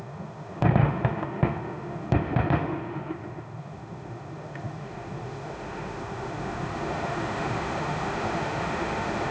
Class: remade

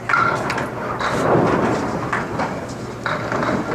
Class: recorded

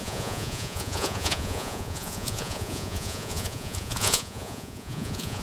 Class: remade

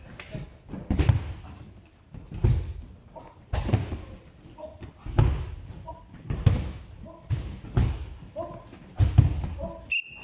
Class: recorded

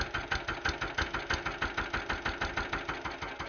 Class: recorded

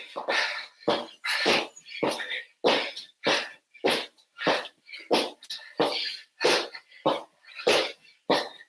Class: recorded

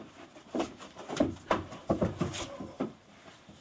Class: remade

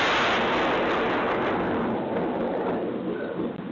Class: recorded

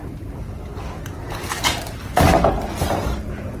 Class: recorded